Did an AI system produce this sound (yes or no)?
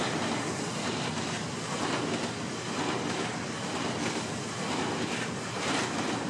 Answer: no